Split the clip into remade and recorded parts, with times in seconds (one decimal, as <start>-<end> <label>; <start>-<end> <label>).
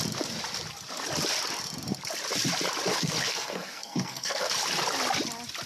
0.0-2.9 recorded; 2.9-4.5 remade; 4.5-5.7 recorded